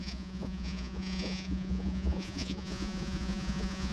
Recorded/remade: remade